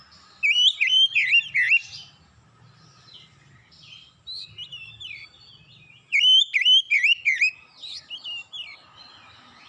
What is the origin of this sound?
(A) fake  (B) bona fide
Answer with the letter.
B